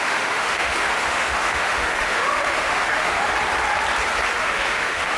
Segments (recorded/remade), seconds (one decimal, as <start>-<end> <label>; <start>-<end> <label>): 0.0-3.3 remade; 3.3-4.4 recorded; 4.4-5.2 remade